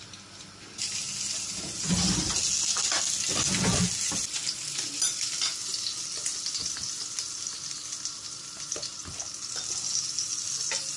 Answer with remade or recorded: recorded